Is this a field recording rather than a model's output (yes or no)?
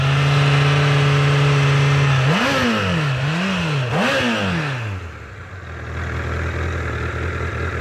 yes